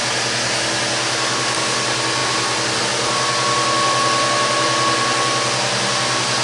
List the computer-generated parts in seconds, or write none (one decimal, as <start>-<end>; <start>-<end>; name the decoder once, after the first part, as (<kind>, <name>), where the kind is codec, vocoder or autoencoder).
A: 2.2-2.8 (vocoder, BigVGAN v2)